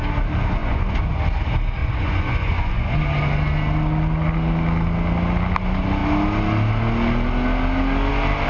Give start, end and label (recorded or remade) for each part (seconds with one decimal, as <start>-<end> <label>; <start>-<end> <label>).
0.0-0.6 recorded; 0.6-1.2 remade; 1.2-1.8 recorded; 1.8-3.0 remade; 3.0-8.5 recorded